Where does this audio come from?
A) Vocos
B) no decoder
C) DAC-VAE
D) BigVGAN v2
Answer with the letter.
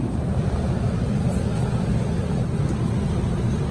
B